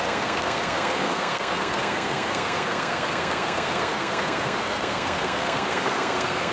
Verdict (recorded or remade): remade